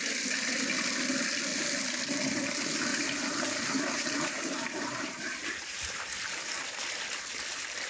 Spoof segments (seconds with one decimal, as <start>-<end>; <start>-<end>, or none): 2.9-6.5